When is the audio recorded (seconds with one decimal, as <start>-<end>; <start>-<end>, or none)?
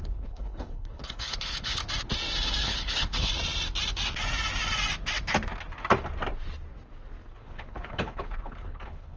1.8-2.6; 3.3-7.4